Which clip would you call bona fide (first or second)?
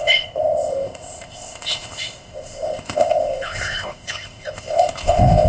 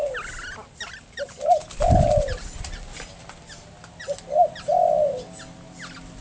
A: second